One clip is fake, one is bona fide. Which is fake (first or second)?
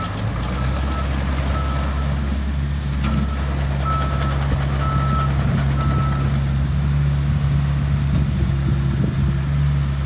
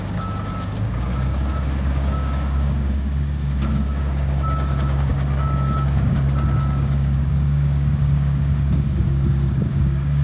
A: second